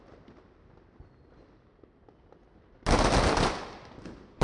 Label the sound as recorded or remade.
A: recorded